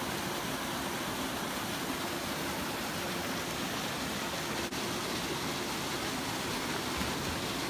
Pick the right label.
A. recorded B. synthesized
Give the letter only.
A